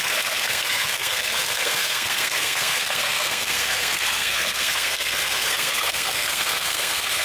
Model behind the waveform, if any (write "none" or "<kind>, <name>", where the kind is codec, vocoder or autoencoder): codec, SNAC